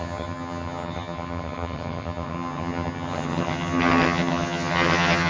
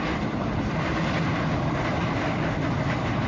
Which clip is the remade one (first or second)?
first